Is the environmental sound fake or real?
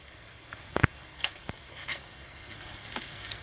fake